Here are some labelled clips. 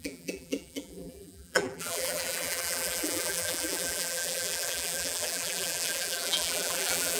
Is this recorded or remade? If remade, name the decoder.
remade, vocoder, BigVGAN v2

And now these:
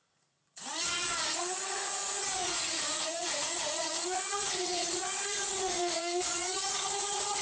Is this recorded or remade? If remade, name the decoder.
remade, vocoder, Vocos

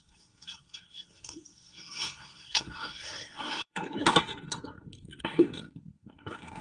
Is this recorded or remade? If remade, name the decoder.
remade, codec, SNAC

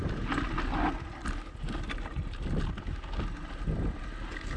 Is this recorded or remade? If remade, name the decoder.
recorded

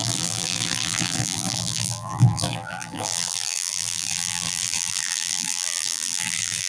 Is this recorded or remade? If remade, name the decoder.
remade, vocoder, BigVGAN v2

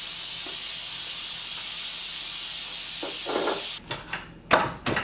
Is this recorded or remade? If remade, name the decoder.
recorded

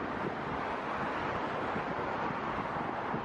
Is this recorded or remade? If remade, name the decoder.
recorded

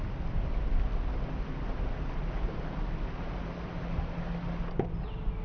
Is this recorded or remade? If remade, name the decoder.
recorded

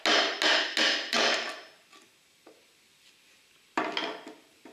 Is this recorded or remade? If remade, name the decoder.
recorded